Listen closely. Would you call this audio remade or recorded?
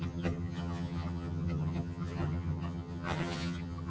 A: remade